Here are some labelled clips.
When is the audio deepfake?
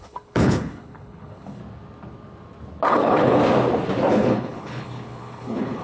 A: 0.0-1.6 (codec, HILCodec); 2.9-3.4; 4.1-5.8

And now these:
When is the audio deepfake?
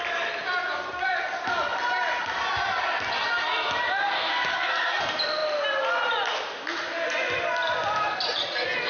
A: 4.0-5.0 (codec, SNAC)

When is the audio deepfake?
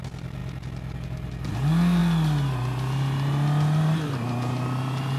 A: none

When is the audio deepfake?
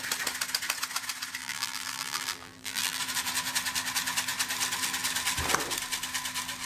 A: 1.4-3.0 (vocoder, BigVGAN v2)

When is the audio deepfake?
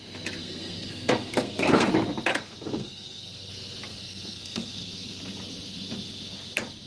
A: 0.4-1.9 (codec, SNAC); 2.3-3.5; 3.9-5.2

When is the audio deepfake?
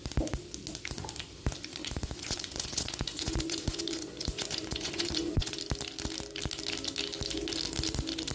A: 1.8-5.6 (vocoder, Vocos)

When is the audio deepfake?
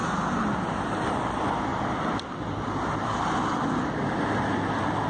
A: none